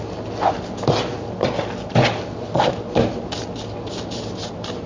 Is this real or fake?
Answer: real